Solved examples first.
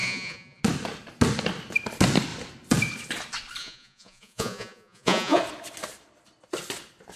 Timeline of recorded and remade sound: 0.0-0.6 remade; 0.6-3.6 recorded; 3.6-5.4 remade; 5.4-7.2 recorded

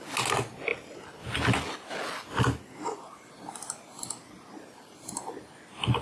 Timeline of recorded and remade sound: 0.0-6.0 recorded

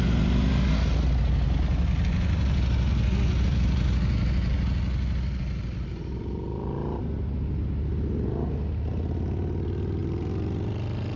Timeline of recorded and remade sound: 0.0-11.2 recorded

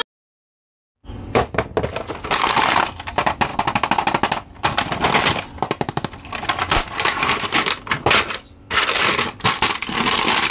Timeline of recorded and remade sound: 0.0-10.5 recorded

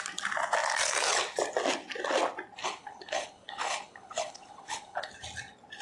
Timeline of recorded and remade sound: 0.0-2.6 recorded; 2.6-5.1 remade; 5.1-5.8 recorded

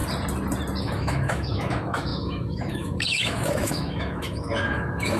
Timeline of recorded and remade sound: 0.0-0.8 recorded; 0.8-5.2 remade